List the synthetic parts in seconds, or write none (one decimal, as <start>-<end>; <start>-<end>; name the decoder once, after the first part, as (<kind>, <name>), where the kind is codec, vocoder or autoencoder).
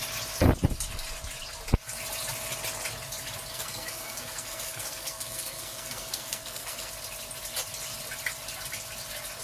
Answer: 3.5-6.9 (codec, SNAC)